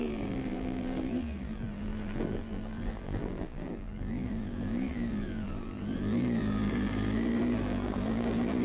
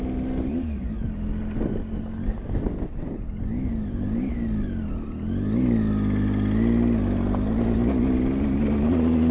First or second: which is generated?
first